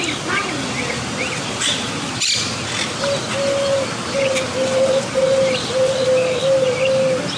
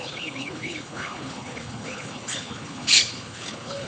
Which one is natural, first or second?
first